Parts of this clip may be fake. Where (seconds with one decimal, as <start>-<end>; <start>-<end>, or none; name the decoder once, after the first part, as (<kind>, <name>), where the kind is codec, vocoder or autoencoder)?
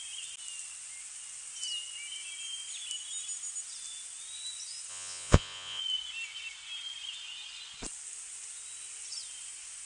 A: 4.9-5.8 (vocoder, Vocos)